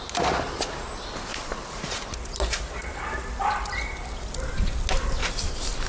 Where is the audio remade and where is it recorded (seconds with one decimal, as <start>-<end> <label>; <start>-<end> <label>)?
0.0-1.3 recorded; 1.3-2.1 remade; 2.1-5.2 recorded; 5.2-5.9 remade